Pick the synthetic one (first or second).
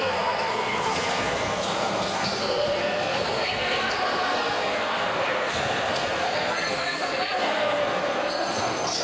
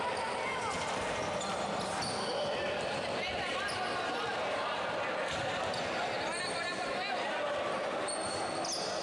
first